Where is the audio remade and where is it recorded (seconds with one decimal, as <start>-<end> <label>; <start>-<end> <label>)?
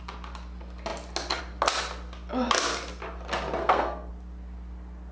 0.0-3.6 recorded; 3.6-4.1 remade; 4.1-5.1 recorded